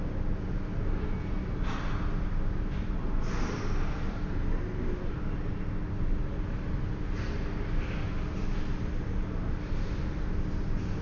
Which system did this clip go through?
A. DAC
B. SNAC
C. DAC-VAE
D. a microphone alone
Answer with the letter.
D